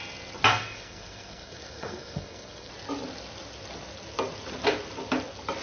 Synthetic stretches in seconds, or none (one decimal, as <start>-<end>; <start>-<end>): 0.5-2.7